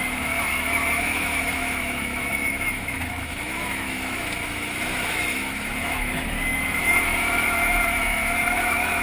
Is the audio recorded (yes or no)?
no